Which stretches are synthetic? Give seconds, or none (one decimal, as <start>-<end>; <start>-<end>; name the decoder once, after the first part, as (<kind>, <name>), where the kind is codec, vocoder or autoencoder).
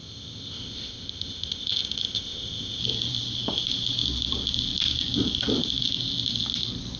0.0-2.8 (codec, ZipCodec)